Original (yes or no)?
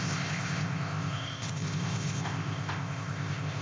no